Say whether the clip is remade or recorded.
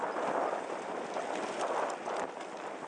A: recorded